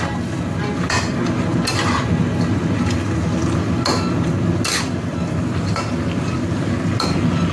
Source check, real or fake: real